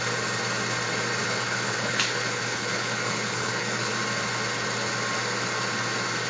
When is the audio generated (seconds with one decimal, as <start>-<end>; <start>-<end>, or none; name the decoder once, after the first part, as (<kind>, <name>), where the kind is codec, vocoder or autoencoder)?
1.2-3.9 (codec, HILCodec)